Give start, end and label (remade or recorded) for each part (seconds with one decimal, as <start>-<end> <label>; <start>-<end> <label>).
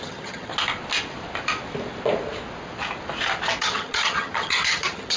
0.0-0.5 remade; 0.5-3.6 recorded; 3.6-5.2 remade